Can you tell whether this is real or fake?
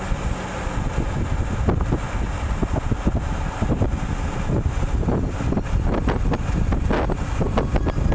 real